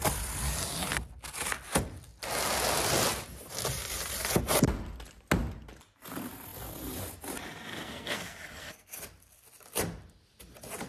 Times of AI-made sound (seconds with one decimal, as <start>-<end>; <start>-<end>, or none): 7.7-9.0